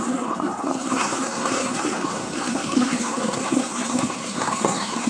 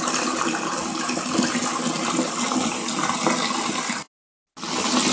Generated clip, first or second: first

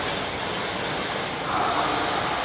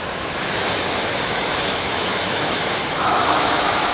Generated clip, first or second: second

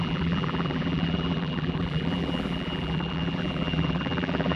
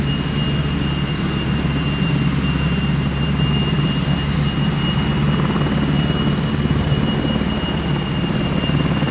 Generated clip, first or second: first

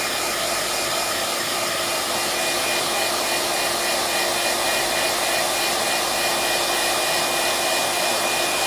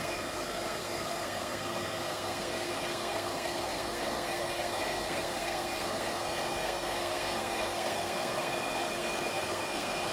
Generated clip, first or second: second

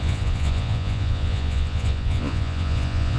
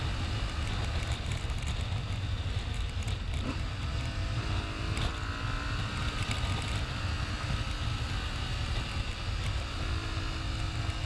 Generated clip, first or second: first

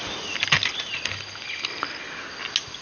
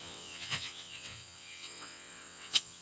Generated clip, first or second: second